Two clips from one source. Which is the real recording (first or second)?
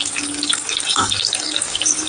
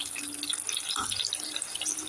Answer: second